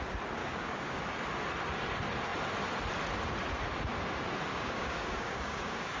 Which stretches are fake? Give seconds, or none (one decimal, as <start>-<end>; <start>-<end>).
0.4-1.0; 4.5-6.0